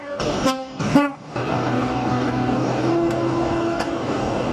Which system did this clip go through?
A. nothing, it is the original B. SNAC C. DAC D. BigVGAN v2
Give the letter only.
C